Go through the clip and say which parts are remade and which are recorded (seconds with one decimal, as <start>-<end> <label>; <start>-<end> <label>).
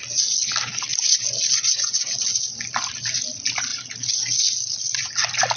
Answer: 0.0-5.6 recorded